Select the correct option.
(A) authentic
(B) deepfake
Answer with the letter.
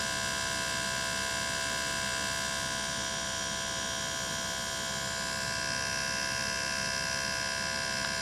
A